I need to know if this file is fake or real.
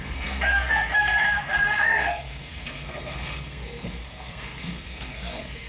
fake